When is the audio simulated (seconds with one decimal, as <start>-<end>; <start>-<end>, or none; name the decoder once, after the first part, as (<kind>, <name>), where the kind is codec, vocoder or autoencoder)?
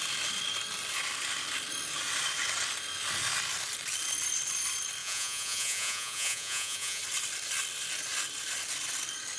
5.0-7.0 (vocoder, Vocos)